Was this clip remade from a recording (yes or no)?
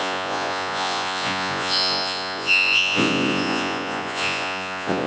yes